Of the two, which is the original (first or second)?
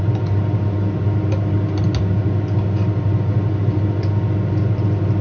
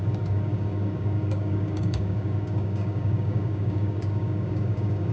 first